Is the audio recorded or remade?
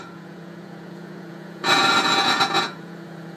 remade